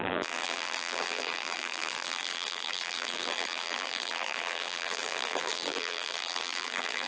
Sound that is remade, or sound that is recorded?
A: remade